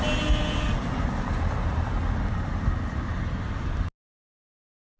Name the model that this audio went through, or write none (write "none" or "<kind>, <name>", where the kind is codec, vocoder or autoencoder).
none